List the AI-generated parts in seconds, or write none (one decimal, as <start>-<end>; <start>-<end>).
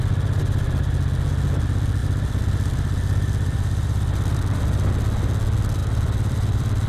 2.0-4.9; 5.8-6.9